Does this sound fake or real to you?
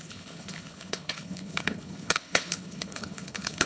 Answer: fake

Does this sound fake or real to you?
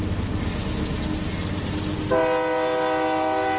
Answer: real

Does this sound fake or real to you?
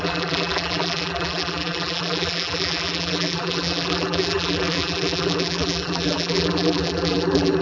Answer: fake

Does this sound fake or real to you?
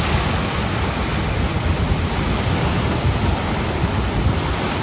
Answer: real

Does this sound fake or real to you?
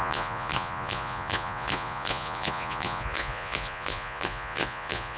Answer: fake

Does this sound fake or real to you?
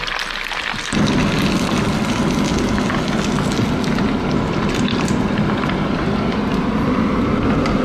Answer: real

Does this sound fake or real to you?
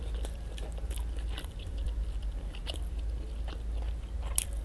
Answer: real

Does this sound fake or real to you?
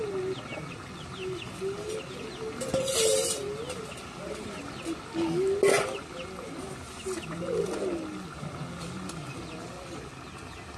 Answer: real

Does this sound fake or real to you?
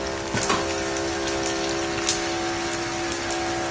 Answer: real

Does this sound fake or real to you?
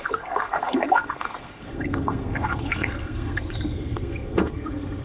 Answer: fake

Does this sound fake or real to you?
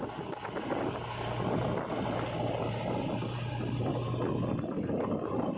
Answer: real